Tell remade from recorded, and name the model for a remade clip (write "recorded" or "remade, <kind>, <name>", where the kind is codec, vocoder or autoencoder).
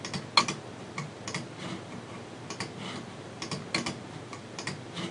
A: recorded